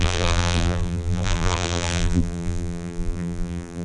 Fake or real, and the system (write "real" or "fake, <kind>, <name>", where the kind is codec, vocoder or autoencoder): fake, vocoder, BigVGAN v2